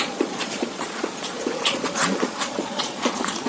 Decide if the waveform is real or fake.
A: fake